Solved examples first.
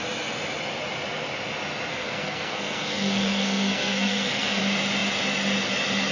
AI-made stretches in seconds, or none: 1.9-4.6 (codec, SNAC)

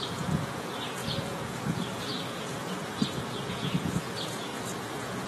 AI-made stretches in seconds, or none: 0.0-5.3 (vocoder, Vocos)